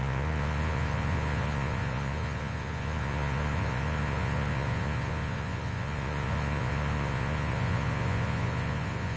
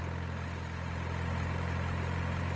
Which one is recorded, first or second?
second